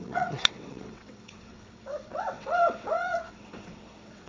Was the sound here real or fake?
fake